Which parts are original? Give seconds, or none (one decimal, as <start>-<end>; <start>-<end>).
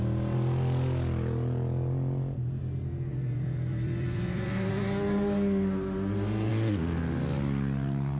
0.0-3.1; 4.7-8.2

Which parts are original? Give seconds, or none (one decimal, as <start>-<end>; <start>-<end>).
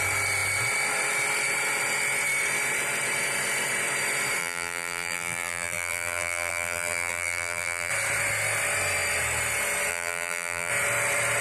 0.0-4.4; 7.9-9.9; 10.7-11.4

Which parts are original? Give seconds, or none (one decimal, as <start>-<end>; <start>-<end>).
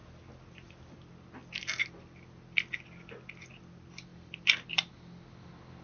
0.0-4.1; 4.9-5.8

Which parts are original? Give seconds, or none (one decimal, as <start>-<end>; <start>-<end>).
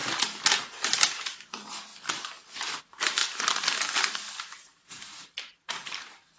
0.0-0.6; 1.9-2.8; 3.2-4.6